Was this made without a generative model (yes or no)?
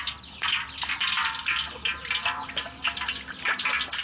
yes